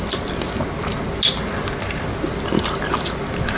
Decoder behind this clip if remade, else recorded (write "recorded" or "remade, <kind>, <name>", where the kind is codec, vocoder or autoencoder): recorded